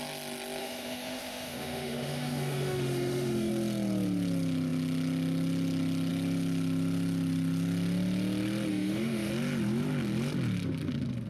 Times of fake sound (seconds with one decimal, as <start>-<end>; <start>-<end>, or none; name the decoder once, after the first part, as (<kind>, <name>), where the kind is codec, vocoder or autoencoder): 0.6-3.5 (autoencoder, DAC-VAE); 8.7-9.3